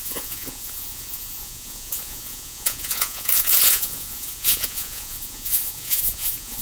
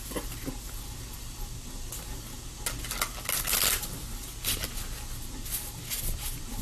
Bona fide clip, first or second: second